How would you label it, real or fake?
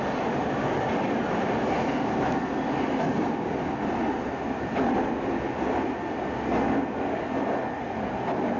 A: real